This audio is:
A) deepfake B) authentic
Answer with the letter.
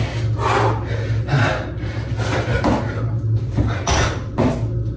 B